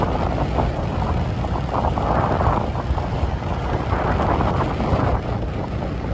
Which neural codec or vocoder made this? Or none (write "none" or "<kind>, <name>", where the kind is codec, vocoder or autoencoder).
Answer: none